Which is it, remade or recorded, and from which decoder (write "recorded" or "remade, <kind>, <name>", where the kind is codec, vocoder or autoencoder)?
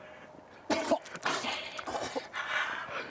recorded